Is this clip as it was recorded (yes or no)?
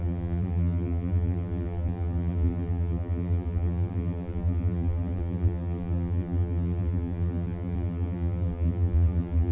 no